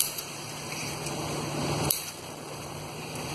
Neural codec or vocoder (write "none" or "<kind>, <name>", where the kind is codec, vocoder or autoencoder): vocoder, BigVGAN v2